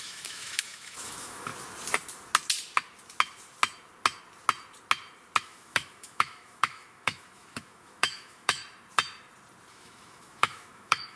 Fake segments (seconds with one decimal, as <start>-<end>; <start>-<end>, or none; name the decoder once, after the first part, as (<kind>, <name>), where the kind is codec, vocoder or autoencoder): 0.0-1.5 (autoencoder, DAC-VAE); 5.4-8.6; 9.7-11.2